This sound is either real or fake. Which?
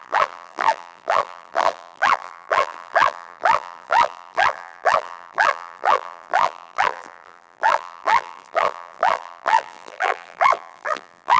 fake